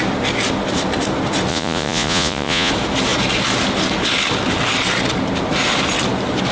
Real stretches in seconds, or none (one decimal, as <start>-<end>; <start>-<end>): 0.0-1.5; 2.7-6.5